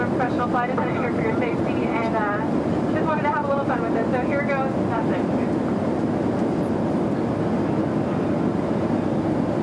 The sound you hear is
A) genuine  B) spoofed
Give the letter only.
A